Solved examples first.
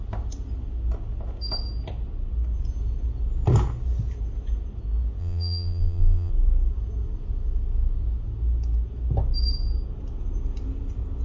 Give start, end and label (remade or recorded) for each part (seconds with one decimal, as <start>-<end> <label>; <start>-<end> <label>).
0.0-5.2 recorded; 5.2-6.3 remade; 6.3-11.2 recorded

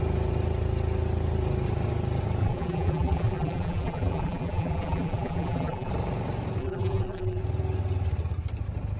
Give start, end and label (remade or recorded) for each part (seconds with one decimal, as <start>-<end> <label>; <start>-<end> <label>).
0.0-2.4 recorded; 2.4-5.9 remade; 5.9-6.6 recorded; 6.6-7.4 remade; 7.4-9.0 recorded

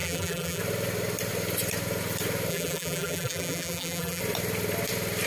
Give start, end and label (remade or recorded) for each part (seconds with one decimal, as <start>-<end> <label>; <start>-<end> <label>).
0.0-0.6 remade; 0.6-2.5 recorded; 2.5-4.2 remade; 4.2-5.3 recorded

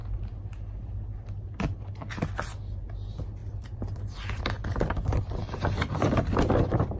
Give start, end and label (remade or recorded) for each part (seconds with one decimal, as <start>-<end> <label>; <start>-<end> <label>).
0.0-3.4 recorded; 3.4-4.4 remade; 4.4-5.1 recorded; 5.1-5.9 remade; 5.9-7.0 recorded

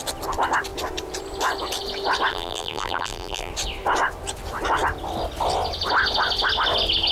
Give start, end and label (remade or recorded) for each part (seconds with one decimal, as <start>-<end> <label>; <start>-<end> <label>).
0.0-2.3 recorded; 2.3-3.5 remade; 3.5-7.1 recorded

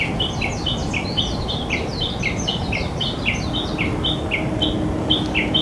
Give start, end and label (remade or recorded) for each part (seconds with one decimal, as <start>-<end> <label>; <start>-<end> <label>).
0.0-2.6 remade; 2.6-5.0 recorded; 5.0-5.6 remade